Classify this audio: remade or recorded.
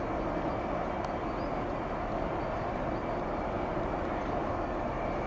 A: recorded